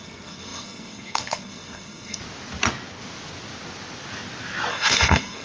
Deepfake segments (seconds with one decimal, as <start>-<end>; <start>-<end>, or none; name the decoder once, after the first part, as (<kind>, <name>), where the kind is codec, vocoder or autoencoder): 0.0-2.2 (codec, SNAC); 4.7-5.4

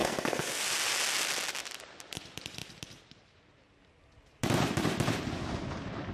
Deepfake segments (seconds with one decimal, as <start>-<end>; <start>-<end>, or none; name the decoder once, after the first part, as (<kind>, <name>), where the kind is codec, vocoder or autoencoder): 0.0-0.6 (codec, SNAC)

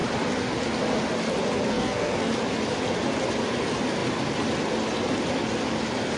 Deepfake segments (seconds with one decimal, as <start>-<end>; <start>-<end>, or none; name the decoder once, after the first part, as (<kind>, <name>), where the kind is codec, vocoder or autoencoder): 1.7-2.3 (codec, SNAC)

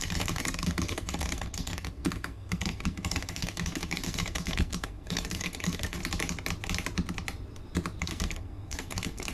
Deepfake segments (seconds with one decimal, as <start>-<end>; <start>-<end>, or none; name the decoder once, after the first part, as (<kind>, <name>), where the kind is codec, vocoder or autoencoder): 0.0-6.0 (codec, SNAC); 8.0-9.3

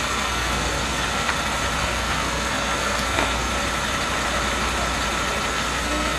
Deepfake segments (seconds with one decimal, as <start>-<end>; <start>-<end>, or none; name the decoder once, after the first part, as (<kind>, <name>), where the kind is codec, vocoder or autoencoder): 0.0-1.3 (codec, SNAC); 1.8-3.5; 5.5-6.2

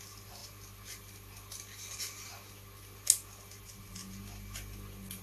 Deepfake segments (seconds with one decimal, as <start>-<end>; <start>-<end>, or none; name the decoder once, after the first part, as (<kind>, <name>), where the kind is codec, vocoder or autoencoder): none